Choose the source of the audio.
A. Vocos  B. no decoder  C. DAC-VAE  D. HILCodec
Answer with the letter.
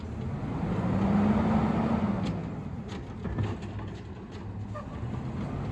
B